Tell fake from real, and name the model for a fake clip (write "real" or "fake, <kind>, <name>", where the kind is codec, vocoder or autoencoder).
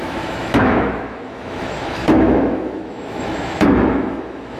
fake, autoencoder, DAC-VAE